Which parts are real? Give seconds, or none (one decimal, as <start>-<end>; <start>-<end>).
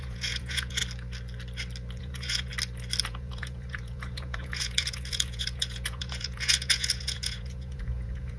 0.8-2.0; 2.5-3.0